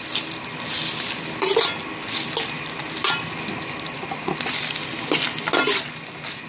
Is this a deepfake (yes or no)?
no